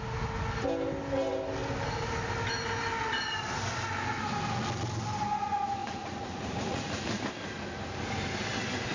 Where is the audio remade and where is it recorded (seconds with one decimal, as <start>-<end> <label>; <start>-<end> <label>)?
0.0-5.8 recorded; 5.8-7.2 remade; 7.2-8.9 recorded